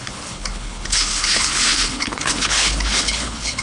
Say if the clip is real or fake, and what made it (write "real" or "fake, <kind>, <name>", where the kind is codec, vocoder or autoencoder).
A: fake, codec, HILCodec